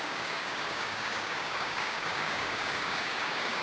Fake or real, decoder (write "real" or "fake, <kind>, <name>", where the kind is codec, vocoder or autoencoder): fake, codec, DAC